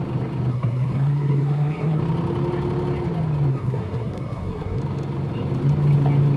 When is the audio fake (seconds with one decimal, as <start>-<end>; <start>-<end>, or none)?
0.5-2.0; 3.5-4.8